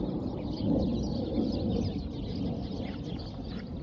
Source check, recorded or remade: recorded